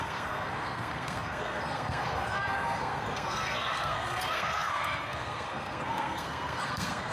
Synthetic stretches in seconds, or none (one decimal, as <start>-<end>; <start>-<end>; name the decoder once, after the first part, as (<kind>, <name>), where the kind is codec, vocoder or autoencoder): 0.0-7.1 (codec, SNAC)